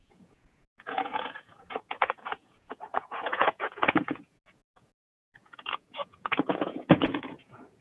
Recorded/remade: remade